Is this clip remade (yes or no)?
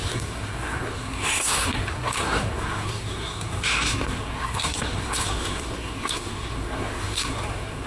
yes